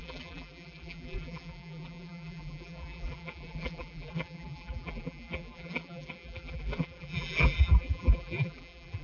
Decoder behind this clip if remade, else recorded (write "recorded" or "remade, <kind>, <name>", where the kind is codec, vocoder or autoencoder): remade, vocoder, BigVGAN v2